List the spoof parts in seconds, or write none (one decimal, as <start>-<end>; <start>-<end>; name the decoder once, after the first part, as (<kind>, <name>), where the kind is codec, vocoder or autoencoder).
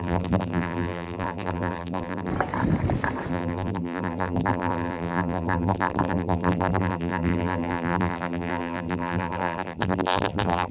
0.0-2.3 (vocoder, BigVGAN v2); 3.3-10.7